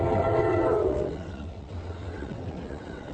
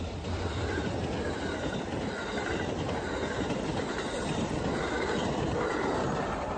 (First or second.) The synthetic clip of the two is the first